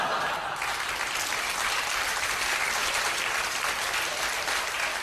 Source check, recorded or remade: recorded